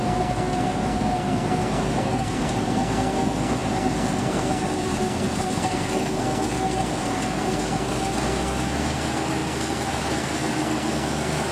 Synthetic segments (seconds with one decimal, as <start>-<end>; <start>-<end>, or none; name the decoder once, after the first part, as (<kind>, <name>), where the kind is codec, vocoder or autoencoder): 0.0-11.5 (codec, SNAC)